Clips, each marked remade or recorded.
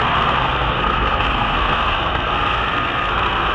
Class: remade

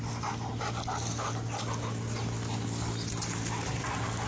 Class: recorded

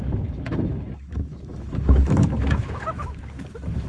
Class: remade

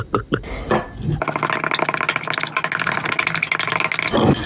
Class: recorded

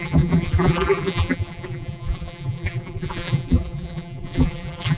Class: remade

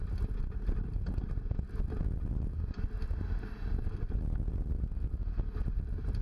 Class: recorded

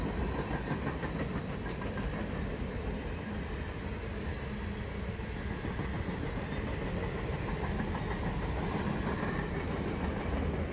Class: recorded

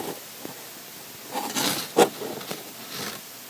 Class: recorded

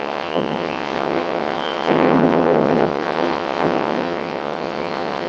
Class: remade